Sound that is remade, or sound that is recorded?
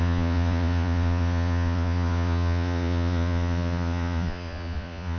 remade